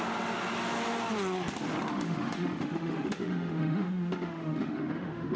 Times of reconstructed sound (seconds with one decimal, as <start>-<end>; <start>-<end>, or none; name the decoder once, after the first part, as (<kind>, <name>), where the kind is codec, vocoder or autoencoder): 1.9-5.4 (autoencoder, DAC-VAE)